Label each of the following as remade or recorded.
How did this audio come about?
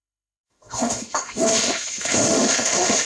remade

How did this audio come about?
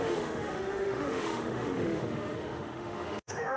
remade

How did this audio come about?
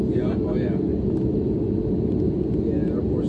recorded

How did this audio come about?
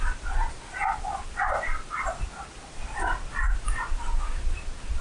recorded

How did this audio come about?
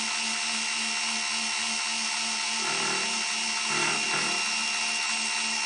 recorded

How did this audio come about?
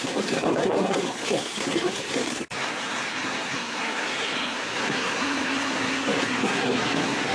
remade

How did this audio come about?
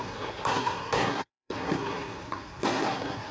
remade